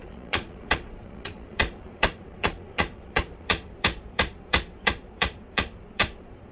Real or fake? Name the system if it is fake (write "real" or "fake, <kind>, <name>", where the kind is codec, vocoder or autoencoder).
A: fake, vocoder, Vocos